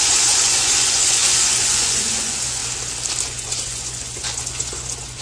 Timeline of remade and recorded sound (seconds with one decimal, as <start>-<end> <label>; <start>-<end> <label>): 0.0-2.6 remade; 2.6-3.2 recorded; 3.2-5.2 remade